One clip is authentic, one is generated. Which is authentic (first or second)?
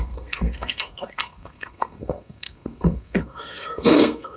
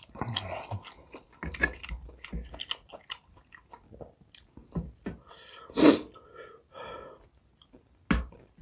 second